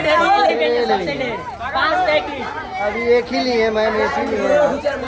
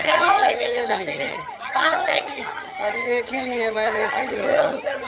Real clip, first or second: first